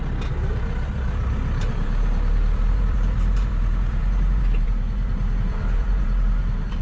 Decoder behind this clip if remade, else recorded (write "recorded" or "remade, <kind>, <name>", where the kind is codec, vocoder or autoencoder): remade, vocoder, BigVGAN v2